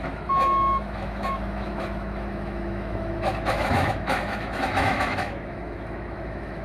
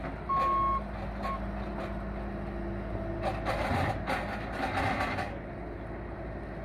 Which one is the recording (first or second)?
second